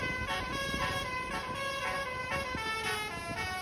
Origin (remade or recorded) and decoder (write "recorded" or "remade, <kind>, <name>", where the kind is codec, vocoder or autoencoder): recorded